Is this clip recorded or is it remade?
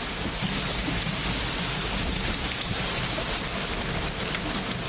recorded